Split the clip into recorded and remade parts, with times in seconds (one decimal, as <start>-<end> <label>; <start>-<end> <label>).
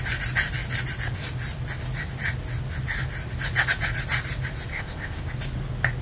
0.0-4.7 recorded; 4.7-5.2 remade; 5.2-6.0 recorded